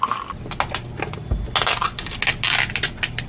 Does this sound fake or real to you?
real